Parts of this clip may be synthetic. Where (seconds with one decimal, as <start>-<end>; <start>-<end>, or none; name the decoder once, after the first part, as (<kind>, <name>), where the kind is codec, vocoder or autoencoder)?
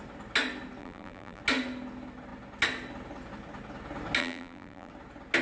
0.8-1.4 (vocoder, BigVGAN v2); 4.2-4.9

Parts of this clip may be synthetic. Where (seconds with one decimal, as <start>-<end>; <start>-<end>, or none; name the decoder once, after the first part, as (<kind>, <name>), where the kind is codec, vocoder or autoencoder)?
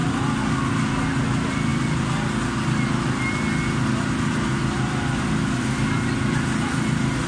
none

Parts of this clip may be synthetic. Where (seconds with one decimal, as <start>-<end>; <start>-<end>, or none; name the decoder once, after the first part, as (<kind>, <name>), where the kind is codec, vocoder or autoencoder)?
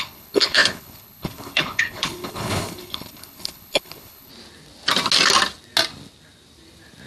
0.0-4.3 (codec, HILCodec)